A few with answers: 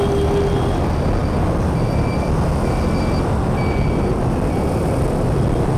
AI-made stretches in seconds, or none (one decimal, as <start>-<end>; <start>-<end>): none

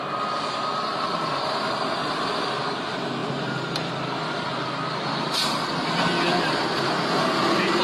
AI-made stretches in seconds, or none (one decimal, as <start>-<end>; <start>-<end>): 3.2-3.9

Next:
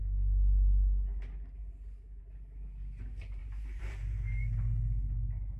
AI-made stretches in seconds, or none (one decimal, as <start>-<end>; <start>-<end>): 3.4-4.2